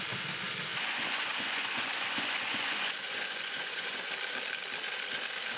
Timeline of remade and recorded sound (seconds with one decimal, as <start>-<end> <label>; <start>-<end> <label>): 0.0-0.7 recorded; 0.7-4.1 remade; 4.1-5.6 recorded